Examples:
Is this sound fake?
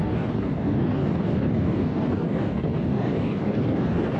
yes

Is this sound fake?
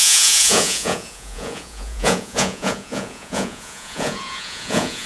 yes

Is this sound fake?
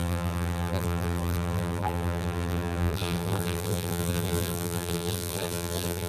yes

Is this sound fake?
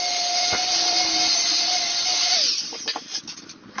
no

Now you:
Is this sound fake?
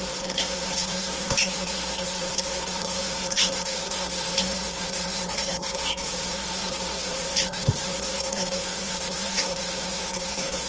yes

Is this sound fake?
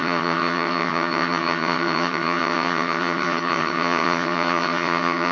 yes